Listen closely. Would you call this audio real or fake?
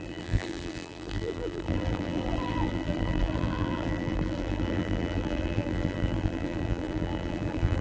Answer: fake